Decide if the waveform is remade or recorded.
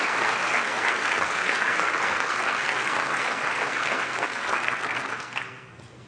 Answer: remade